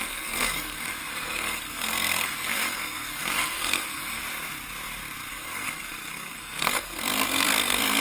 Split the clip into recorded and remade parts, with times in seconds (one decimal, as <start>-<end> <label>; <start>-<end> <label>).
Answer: 0.0-4.2 remade; 4.2-5.3 recorded; 5.3-8.0 remade